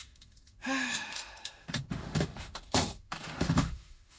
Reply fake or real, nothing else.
fake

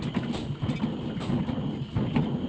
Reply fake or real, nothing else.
real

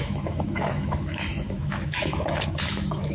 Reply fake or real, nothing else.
fake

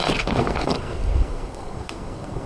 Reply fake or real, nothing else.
fake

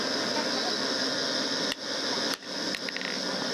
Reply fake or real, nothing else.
real